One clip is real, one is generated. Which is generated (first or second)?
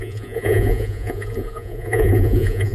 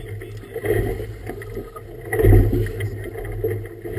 first